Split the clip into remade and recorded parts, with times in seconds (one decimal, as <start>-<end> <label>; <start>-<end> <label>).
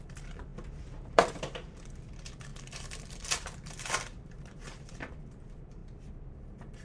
0.0-0.5 remade; 0.5-1.0 recorded; 1.0-5.8 remade; 5.8-6.3 recorded; 6.3-6.8 remade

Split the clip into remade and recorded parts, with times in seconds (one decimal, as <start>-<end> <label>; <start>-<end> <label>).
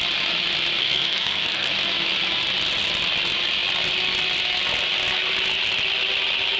0.0-0.8 recorded; 0.8-1.7 remade; 1.7-6.6 recorded